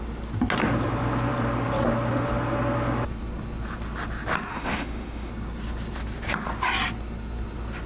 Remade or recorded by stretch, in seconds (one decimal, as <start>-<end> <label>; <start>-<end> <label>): 0.0-4.5 recorded; 4.5-5.3 remade; 5.3-7.9 recorded